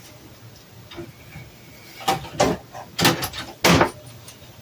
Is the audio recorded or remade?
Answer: recorded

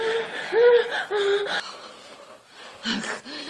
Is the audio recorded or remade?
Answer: recorded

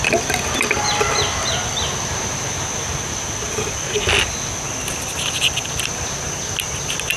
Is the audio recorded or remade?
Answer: recorded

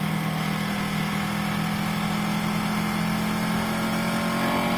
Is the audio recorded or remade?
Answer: recorded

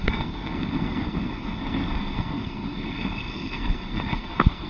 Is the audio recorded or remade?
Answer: remade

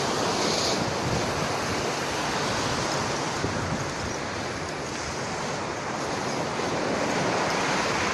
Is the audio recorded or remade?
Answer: recorded